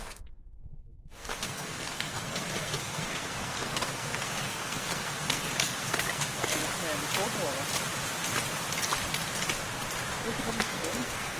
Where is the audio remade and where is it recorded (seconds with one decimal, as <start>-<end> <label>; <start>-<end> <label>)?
0.0-6.6 remade; 6.6-10.4 recorded; 10.4-11.4 remade